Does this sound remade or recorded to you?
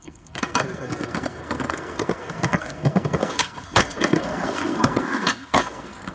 remade